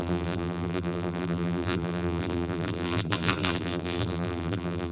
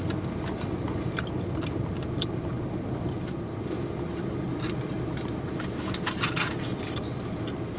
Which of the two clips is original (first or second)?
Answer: second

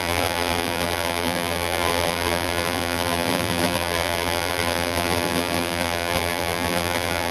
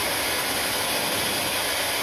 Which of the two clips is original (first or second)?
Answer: second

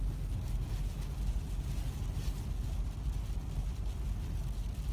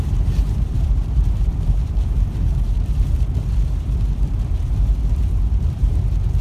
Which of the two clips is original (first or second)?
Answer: first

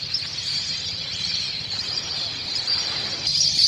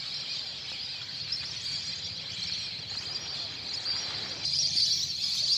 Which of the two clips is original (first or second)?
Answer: second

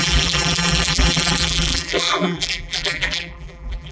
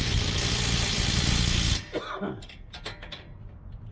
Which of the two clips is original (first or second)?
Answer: second